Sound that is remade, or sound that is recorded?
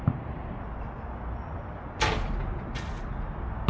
recorded